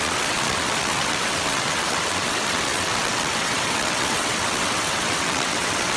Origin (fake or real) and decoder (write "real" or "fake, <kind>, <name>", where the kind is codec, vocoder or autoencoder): fake, vocoder, WaveNeXt